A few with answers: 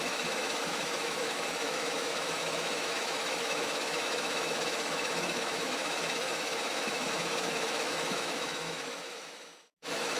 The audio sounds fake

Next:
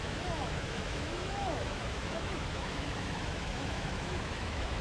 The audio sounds fake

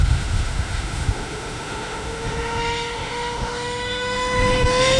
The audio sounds fake